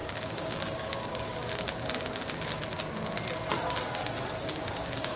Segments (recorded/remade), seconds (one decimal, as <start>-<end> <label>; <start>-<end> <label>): 0.0-1.3 remade; 1.3-4.4 recorded; 4.4-5.2 remade